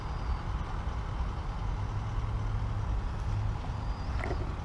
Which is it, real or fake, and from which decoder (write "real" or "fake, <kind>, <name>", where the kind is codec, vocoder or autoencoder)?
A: real